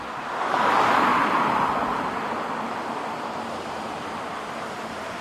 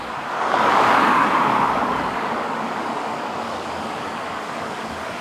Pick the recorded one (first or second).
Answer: first